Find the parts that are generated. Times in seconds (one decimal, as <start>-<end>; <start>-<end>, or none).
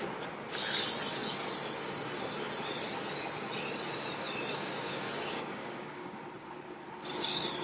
4.5-6.2